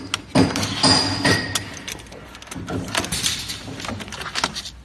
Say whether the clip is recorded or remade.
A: recorded